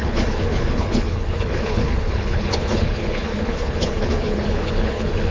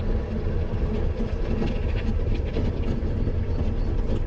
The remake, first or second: first